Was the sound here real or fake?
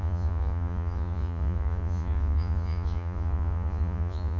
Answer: fake